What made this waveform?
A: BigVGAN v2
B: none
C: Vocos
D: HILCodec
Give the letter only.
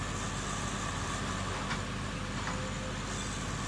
B